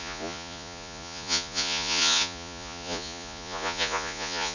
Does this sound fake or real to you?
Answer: fake